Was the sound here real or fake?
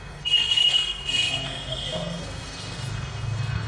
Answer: fake